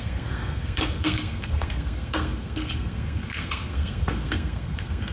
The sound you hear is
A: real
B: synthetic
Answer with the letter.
B